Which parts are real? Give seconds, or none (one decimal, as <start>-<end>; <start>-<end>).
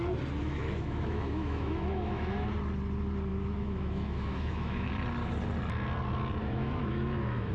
0.0-0.4; 2.5-3.3; 4.9-6.4